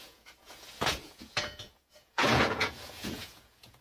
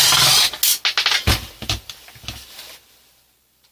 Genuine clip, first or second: second